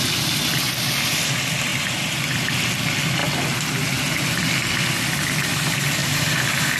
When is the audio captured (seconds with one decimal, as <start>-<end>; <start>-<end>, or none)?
0.0-1.7; 2.2-6.0